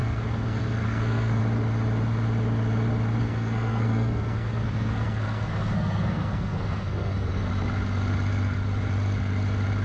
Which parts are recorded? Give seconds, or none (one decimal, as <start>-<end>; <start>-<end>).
1.4-3.2; 7.5-9.8